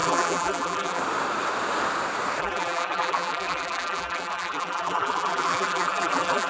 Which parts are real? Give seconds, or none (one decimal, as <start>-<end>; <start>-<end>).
1.0-2.4